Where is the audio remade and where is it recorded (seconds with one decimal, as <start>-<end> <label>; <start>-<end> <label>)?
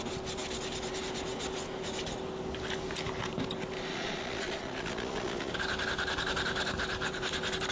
0.0-3.9 recorded; 3.9-5.5 remade; 5.5-7.7 recorded